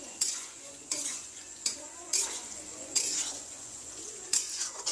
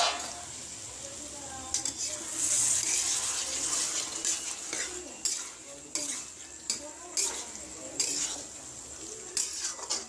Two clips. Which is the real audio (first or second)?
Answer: second